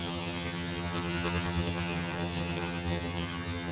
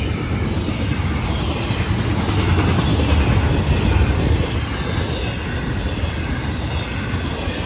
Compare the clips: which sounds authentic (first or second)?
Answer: second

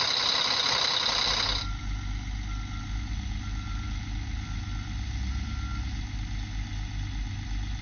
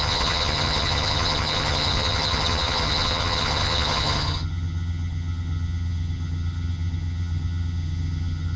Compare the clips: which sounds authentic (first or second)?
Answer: first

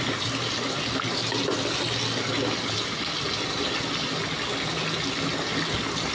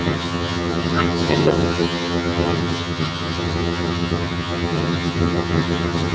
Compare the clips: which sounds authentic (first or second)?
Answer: first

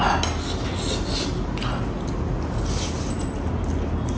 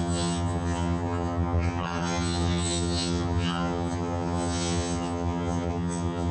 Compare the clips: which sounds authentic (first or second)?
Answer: first